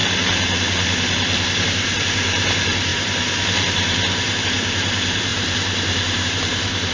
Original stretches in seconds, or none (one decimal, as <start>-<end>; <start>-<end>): 0.0-1.6

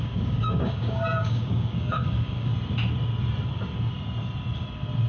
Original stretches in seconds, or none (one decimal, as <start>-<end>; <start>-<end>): 2.5-5.1

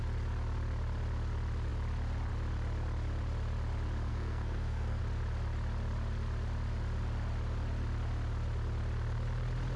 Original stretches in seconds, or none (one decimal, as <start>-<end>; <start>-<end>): 0.0-4.1; 5.0-9.8

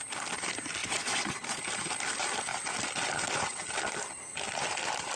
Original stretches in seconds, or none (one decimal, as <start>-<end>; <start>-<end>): 0.0-0.8; 1.6-5.2

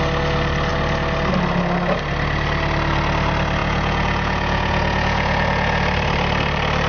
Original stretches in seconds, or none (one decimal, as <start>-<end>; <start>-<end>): 0.0-3.6; 5.8-6.9

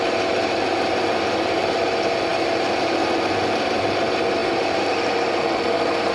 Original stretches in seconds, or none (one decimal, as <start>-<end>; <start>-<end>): 0.0-6.1